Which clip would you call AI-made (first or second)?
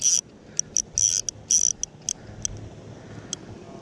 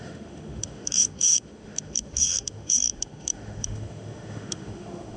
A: second